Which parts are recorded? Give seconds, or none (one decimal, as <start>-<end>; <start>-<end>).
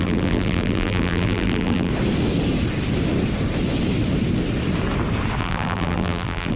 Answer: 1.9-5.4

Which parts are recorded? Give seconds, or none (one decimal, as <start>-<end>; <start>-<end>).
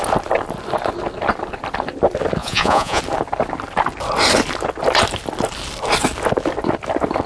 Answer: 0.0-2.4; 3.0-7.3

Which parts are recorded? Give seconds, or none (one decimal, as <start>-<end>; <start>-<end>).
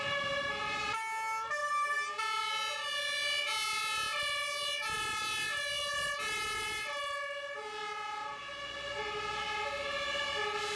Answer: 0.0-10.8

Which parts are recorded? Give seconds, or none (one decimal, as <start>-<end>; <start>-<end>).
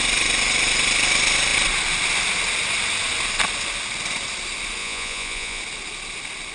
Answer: 0.0-4.8; 5.6-6.5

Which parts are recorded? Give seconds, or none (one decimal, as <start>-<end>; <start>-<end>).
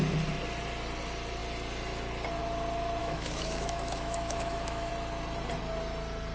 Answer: 0.0-3.0; 4.9-6.3